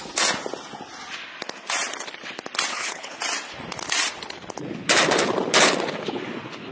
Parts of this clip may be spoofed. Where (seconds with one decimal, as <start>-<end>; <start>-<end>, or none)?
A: 2.7-3.2